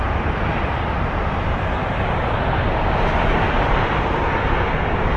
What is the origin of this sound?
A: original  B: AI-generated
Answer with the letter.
A